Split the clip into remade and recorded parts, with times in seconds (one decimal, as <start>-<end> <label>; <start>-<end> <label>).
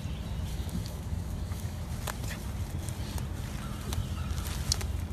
0.0-0.5 recorded; 0.5-1.8 remade; 1.8-5.1 recorded